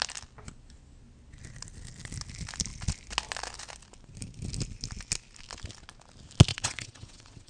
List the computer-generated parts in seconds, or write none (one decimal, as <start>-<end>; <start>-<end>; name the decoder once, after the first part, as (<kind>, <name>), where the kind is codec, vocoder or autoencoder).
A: 6.5-7.5 (vocoder, WaveNeXt)